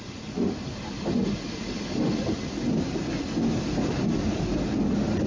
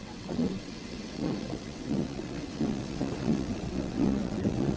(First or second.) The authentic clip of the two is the first